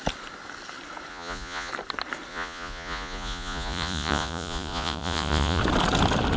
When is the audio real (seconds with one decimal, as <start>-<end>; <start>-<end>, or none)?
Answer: 0.0-1.1; 1.7-2.3; 5.6-6.4